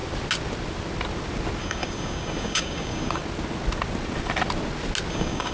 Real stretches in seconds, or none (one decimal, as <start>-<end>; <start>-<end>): 0.0-1.6; 3.2-5.1